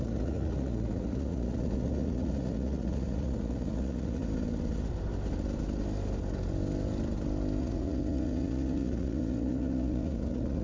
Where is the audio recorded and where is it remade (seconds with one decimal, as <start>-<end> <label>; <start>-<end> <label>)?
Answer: 0.0-4.2 remade; 4.2-7.6 recorded; 7.6-10.6 remade